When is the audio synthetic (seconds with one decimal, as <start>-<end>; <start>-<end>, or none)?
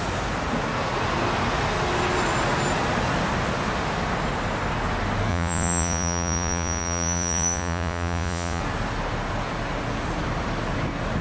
5.3-8.6